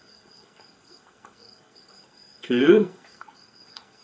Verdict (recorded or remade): remade